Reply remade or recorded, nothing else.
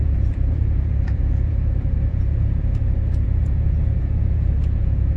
remade